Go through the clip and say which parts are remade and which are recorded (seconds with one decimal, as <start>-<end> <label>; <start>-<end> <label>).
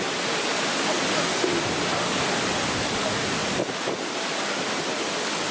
0.0-5.5 recorded